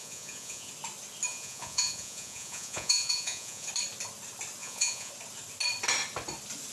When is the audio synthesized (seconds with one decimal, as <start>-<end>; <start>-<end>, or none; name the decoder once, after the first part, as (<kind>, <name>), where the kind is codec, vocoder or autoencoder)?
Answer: 0.0-0.7 (vocoder, Vocos); 1.3-3.7; 4.6-5.1